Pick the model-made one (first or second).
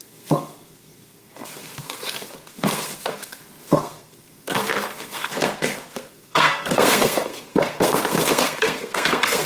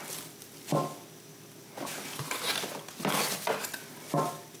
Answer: first